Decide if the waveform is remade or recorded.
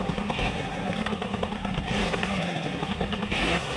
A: remade